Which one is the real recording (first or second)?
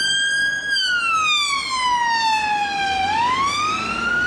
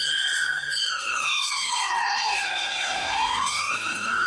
first